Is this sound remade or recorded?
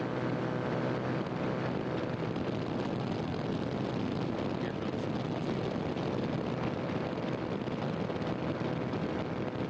recorded